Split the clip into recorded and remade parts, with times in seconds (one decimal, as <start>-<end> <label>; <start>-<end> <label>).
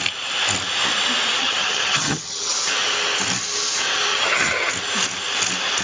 0.0-1.4 recorded; 1.4-2.5 remade; 2.5-4.1 recorded; 4.1-4.7 remade; 4.7-5.8 recorded